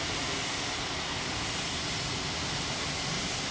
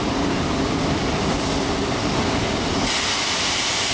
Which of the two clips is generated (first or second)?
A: first